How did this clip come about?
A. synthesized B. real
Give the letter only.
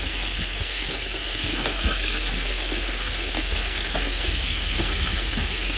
A